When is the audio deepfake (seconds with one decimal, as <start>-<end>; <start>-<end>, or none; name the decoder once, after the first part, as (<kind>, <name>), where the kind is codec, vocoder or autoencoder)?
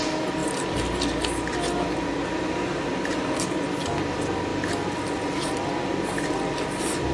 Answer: none